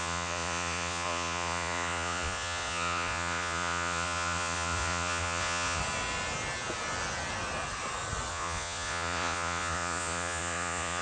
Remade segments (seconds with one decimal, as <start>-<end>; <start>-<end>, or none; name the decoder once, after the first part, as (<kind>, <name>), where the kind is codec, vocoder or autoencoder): 0.0-5.8 (vocoder, Vocos); 8.3-11.0